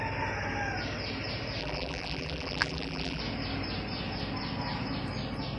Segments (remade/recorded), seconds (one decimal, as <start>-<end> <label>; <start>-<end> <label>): 0.0-1.6 recorded; 1.6-3.2 remade; 3.2-5.6 recorded